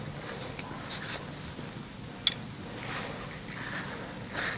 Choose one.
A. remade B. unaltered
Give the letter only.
B